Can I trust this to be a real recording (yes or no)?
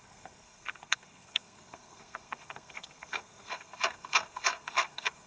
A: no